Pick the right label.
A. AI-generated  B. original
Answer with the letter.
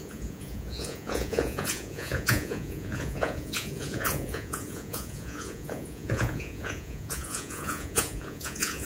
A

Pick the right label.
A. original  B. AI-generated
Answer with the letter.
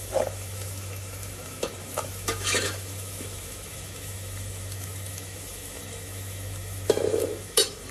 B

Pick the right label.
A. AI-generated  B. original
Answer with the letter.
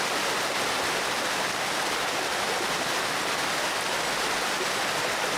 B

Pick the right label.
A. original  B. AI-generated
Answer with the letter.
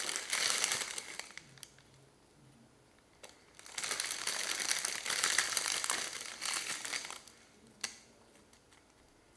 A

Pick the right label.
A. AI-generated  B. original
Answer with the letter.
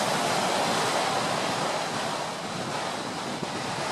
B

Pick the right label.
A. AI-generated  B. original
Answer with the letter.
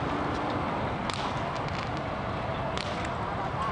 B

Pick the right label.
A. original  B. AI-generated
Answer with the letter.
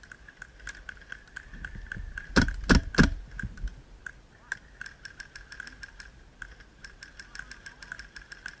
A